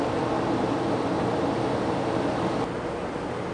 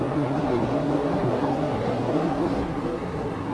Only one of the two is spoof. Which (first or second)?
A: second